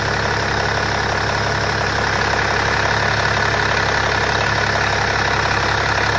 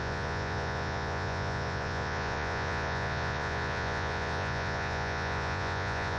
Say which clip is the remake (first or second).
second